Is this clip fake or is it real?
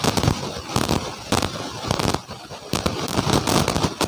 real